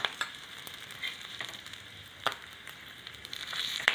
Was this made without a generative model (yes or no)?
no